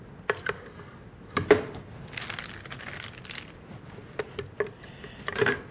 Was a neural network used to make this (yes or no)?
no